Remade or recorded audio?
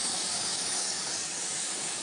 remade